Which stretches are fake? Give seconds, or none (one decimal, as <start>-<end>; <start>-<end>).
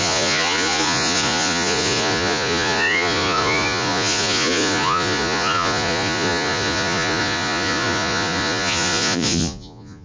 0.0-10.0